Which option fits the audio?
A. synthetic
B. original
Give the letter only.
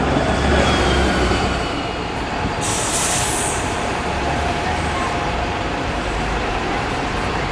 A